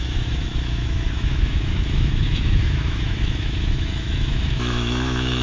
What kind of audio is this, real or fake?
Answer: fake